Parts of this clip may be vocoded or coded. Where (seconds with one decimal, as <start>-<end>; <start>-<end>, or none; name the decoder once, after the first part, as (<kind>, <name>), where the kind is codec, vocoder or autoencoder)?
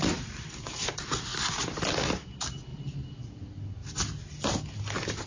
none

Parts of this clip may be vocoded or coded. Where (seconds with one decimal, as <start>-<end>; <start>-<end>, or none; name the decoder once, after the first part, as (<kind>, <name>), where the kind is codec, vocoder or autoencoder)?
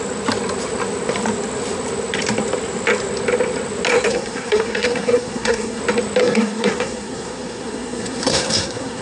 4.1-5.8 (codec, SNAC); 6.2-9.0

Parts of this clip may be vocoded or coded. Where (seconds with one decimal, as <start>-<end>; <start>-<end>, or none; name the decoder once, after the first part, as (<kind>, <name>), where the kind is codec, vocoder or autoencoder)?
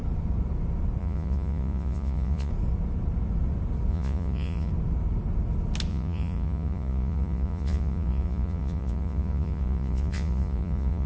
1.0-2.5 (vocoder, Vocos); 3.9-4.7; 5.9-11.1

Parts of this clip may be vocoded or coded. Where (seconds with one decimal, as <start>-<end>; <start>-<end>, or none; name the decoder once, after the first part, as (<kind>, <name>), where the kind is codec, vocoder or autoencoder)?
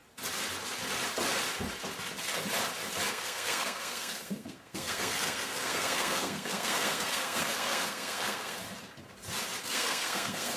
3.1-8.6 (codec, SNAC); 9.6-10.6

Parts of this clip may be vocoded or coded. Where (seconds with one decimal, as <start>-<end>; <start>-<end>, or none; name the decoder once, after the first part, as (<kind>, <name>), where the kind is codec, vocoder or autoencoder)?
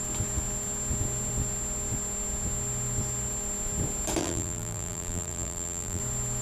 4.2-6.0 (vocoder, BigVGAN v2)